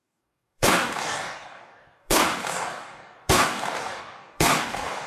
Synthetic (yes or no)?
yes